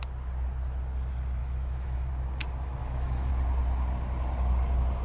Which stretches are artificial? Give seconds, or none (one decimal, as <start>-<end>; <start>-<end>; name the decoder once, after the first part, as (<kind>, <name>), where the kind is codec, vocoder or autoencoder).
1.4-2.1 (autoencoder, DAC-VAE); 2.8-3.3